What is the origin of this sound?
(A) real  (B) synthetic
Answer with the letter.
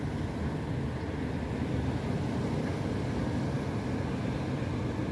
A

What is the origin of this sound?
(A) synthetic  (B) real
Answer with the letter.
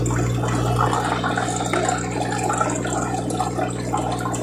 B